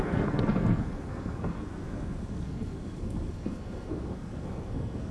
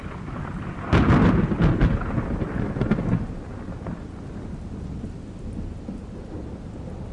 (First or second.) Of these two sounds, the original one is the second